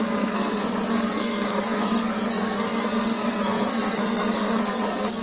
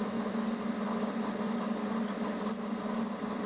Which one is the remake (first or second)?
first